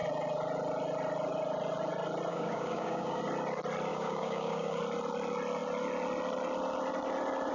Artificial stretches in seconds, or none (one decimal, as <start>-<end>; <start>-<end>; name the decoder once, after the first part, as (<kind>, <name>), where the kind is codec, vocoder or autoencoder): 2.3-3.2 (codec, DAC); 3.9-4.8